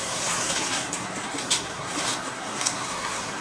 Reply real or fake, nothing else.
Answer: fake